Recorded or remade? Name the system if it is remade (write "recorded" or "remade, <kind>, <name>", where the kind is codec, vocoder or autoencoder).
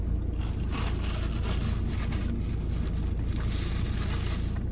recorded